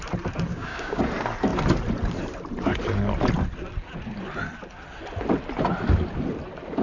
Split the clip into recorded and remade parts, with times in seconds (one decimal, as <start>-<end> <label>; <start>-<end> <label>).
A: 0.0-0.5 recorded; 0.5-1.0 remade; 1.0-6.8 recorded

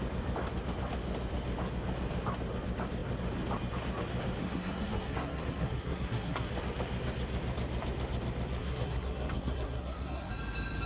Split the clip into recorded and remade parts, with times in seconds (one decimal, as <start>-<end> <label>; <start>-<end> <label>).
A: 0.0-4.4 recorded; 4.4-6.5 remade; 6.5-8.6 recorded; 8.6-10.3 remade; 10.3-10.9 recorded

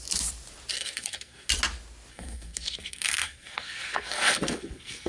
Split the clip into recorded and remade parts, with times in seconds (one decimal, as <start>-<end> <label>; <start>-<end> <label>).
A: 0.0-0.7 recorded; 0.7-1.5 remade; 1.5-2.1 recorded; 2.1-5.1 remade

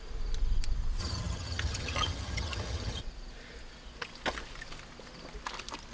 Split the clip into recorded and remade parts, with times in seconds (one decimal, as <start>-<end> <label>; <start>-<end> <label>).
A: 0.0-1.0 recorded; 1.0-3.0 remade; 3.0-5.9 recorded

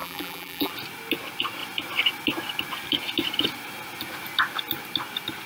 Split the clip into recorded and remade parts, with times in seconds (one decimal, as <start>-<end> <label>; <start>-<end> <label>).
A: 0.0-0.7 remade; 0.7-5.5 recorded

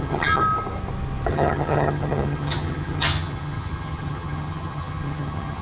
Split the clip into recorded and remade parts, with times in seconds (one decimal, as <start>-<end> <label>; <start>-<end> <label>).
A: 0.0-0.4 remade; 0.4-1.3 recorded; 1.3-5.6 remade

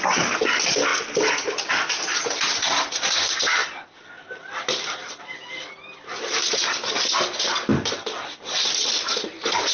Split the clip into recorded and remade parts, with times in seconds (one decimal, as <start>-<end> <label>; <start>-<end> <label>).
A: 0.0-9.7 recorded